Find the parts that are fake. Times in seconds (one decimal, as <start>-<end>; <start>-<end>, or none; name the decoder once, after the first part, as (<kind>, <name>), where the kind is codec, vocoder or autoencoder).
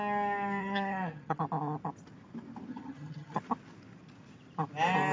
0.6-1.4 (vocoder, HiFi-GAN); 2.7-3.4